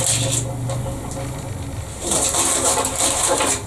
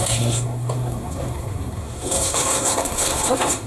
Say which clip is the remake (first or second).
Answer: second